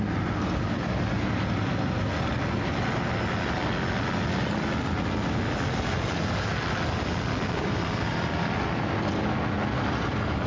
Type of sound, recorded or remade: recorded